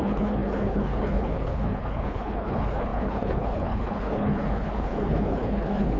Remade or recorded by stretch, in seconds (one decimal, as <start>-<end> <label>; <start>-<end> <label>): 0.0-6.0 remade